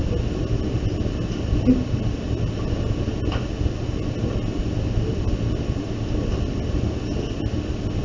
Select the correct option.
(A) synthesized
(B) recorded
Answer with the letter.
B